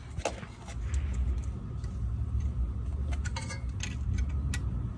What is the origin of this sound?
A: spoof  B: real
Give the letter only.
B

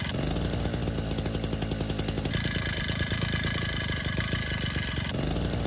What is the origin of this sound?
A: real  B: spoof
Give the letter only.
A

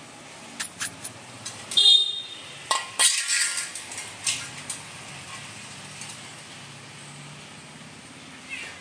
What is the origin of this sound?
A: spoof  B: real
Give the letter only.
B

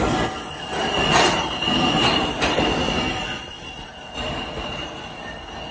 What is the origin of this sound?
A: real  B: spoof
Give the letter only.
A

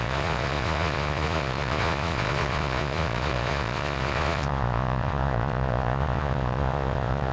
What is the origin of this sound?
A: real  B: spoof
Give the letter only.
B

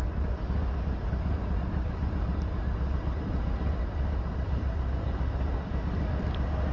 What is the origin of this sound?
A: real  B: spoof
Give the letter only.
A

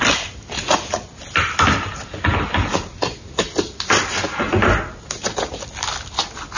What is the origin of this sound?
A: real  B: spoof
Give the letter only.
A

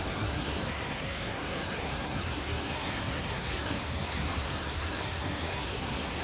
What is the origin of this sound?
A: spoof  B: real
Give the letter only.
A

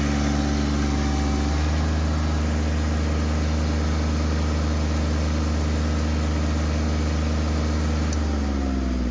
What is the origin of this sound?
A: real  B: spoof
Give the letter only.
A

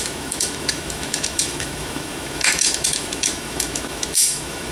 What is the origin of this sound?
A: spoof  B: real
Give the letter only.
A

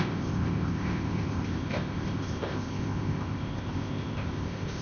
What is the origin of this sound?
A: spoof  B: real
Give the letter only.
A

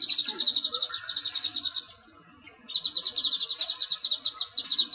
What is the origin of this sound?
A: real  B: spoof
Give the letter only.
A